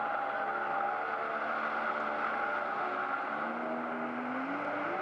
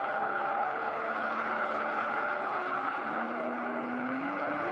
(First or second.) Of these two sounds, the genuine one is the first